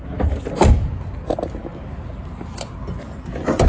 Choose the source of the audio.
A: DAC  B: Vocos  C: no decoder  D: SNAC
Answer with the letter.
C